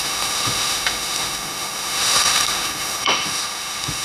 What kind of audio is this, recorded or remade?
remade